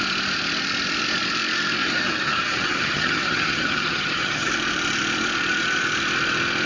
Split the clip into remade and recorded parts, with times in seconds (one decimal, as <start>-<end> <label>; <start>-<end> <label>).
0.0-1.8 recorded; 1.8-4.5 remade; 4.5-6.7 recorded